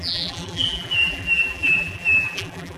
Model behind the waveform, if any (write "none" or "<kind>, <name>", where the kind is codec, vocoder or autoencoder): vocoder, BigVGAN v2